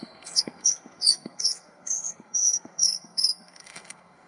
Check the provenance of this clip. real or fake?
fake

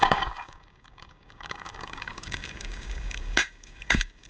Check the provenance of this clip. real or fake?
fake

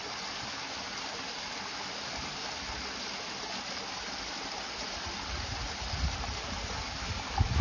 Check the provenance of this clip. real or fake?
real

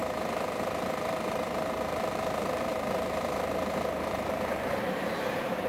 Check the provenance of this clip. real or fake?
fake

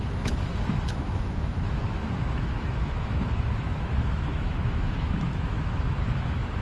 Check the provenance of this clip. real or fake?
fake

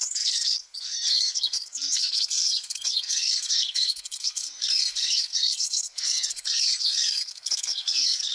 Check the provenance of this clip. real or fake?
fake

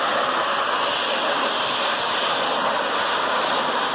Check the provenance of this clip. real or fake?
real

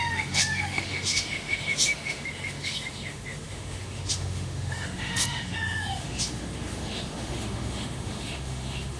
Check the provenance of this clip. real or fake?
fake